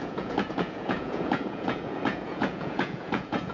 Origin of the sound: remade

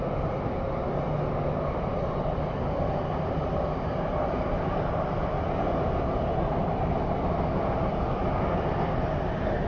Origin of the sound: recorded